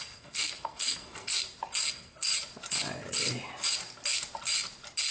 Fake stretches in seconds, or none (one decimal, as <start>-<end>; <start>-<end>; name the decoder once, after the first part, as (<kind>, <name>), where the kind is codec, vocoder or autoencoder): 0.0-1.3 (codec, SNAC); 1.9-2.3